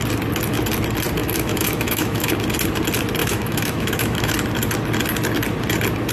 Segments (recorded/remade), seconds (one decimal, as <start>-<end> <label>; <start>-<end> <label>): 0.0-1.2 recorded; 1.2-2.3 remade; 2.3-3.2 recorded; 3.2-4.3 remade; 4.3-6.1 recorded